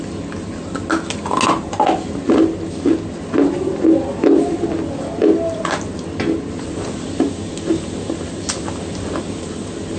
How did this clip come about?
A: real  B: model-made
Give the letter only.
A